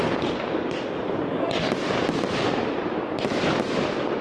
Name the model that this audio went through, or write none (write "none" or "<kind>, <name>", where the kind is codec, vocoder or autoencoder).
none